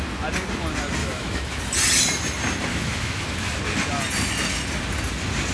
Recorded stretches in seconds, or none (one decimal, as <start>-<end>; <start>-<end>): 0.0-1.0; 1.6-2.7; 3.6-5.5